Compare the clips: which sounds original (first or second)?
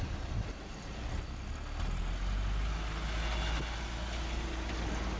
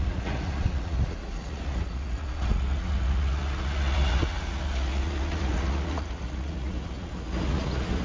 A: first